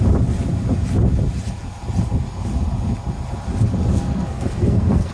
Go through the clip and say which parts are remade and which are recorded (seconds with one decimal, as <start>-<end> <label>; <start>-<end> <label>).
0.0-3.9 recorded; 3.9-5.1 remade